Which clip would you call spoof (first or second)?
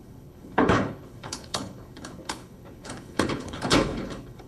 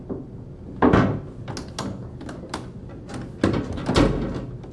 first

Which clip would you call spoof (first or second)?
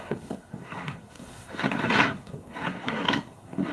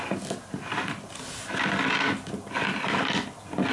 first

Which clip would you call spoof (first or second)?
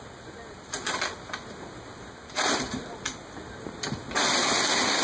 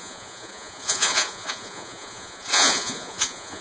second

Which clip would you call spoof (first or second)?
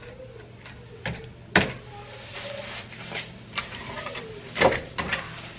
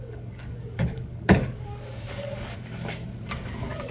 second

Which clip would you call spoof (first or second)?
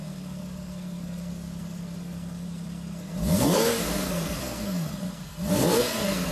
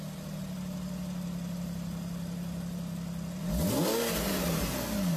first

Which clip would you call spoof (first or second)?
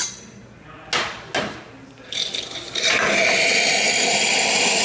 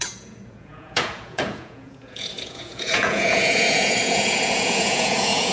second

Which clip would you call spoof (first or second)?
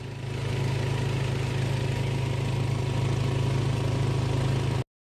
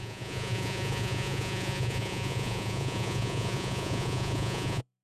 second